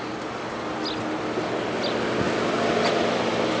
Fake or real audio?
real